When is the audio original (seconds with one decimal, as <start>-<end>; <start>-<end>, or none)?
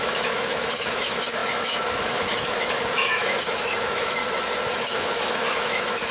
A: 4.2-4.7